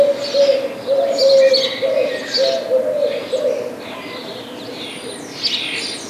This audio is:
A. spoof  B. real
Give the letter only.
B